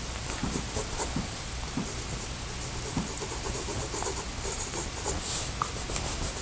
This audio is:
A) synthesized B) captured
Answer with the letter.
B